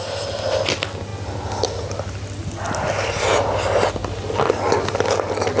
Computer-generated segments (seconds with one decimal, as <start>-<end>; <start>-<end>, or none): none